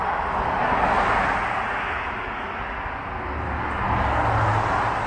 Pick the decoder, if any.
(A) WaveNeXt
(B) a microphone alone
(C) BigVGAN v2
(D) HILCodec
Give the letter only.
B